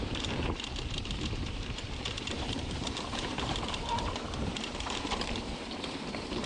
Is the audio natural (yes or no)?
no